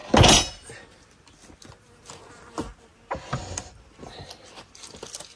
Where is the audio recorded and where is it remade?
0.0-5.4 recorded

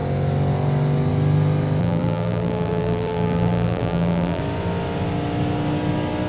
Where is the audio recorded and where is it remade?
0.0-1.8 recorded; 1.8-4.4 remade; 4.4-6.3 recorded

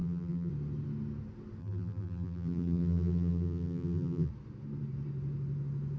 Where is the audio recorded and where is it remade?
0.0-0.5 remade; 0.5-1.6 recorded; 1.6-4.3 remade; 4.3-6.0 recorded

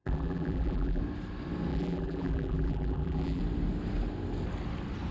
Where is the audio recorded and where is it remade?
0.0-1.0 remade; 1.0-1.7 recorded; 1.7-3.4 remade; 3.4-5.1 recorded

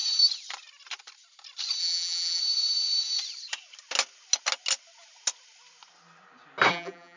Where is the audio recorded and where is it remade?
0.0-1.8 recorded; 1.8-2.4 remade; 2.4-6.7 recorded; 6.7-7.2 remade